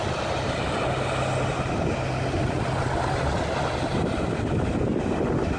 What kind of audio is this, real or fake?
real